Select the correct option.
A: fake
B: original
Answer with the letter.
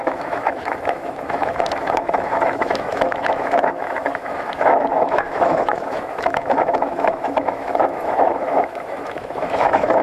A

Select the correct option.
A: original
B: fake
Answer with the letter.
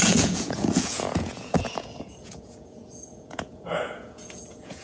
B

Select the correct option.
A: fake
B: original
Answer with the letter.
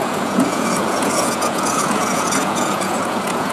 A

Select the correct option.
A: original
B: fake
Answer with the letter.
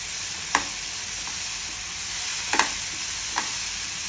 A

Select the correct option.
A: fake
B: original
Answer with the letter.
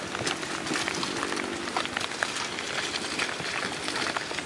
B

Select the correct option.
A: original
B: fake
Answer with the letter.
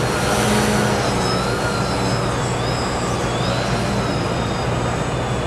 A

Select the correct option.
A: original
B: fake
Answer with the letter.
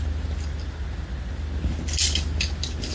A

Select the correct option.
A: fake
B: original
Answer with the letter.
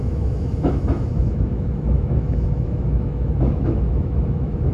A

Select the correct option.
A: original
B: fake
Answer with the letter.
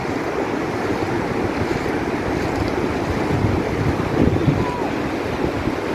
A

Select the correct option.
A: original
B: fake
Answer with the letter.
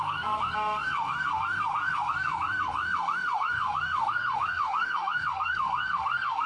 B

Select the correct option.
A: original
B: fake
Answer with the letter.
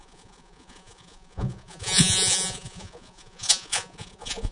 B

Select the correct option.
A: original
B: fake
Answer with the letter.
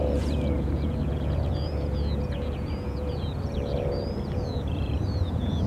B